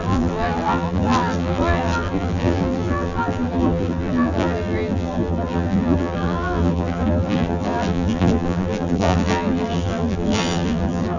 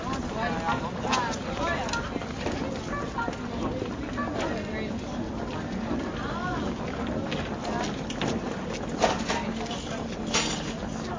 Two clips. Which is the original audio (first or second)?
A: second